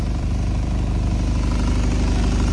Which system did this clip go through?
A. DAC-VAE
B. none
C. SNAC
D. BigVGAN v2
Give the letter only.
D